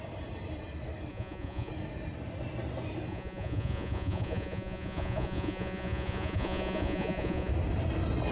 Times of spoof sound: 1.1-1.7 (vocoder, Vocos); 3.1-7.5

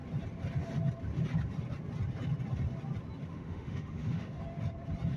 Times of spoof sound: 3.3-4.4 (autoencoder, DAC-VAE)